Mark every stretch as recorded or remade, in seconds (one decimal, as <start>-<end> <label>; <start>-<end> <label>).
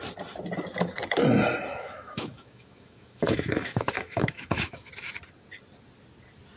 0.0-1.7 recorded; 1.7-4.9 remade; 4.9-6.6 recorded